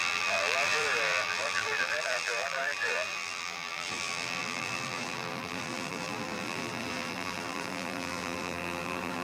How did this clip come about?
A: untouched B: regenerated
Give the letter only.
B